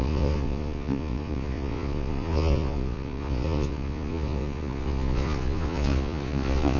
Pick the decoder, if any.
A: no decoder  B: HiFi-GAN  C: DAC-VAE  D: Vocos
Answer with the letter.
D